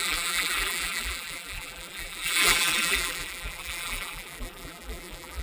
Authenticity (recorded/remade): remade